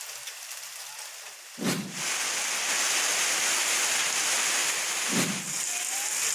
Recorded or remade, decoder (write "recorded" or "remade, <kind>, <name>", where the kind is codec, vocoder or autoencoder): recorded